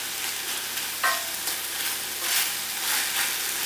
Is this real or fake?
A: real